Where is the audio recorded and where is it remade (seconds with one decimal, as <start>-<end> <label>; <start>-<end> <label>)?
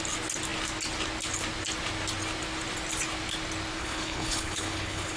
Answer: 0.0-3.8 recorded; 3.8-5.2 remade